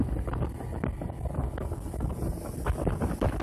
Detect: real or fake real